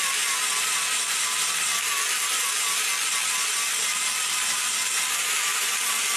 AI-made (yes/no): no